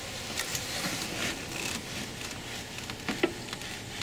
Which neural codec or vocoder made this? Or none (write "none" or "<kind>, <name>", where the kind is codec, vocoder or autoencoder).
none